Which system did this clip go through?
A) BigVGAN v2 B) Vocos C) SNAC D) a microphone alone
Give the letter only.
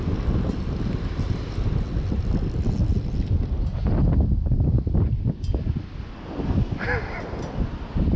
D